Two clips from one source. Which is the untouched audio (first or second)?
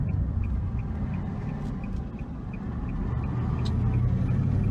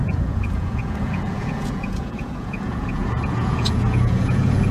first